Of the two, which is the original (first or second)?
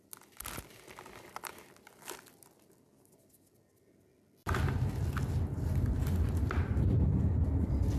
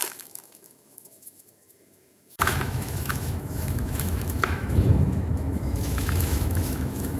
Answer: first